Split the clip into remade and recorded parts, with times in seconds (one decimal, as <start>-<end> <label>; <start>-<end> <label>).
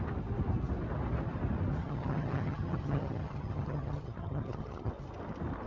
0.0-1.8 recorded; 1.8-4.9 remade; 4.9-5.7 recorded